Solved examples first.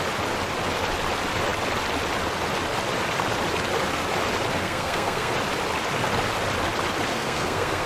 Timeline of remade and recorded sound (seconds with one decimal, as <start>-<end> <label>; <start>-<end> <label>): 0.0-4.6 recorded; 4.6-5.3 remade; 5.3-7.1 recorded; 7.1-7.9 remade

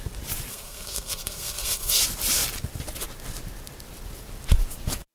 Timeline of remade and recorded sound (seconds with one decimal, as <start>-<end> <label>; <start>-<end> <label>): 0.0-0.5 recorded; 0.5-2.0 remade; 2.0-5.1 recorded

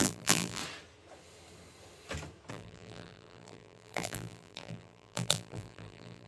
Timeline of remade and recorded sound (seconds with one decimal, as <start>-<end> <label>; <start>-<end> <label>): 0.0-0.6 remade; 0.6-2.5 recorded; 2.5-6.3 remade

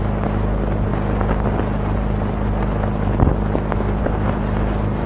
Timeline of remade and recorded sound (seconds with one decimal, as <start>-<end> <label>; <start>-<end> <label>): 0.0-5.1 recorded

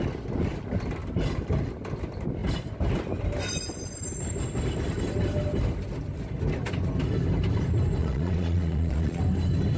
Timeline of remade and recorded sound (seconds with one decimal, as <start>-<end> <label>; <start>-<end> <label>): 0.0-8.0 recorded; 8.0-9.2 remade; 9.2-9.8 recorded

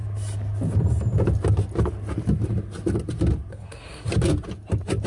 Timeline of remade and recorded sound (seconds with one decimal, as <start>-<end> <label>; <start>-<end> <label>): 0.0-3.5 recorded; 3.5-4.1 remade; 4.1-5.1 recorded

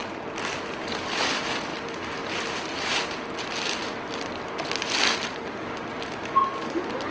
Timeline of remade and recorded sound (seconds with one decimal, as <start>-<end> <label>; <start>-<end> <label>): 0.0-7.1 recorded